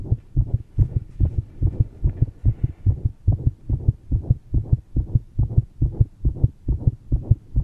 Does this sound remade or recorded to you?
recorded